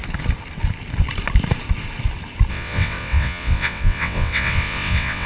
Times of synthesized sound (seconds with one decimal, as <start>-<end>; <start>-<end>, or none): 2.5-5.3